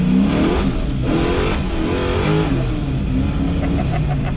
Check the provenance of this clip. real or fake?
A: real